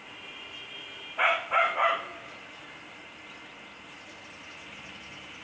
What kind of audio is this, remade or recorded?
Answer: recorded